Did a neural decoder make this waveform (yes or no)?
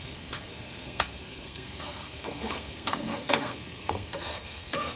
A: yes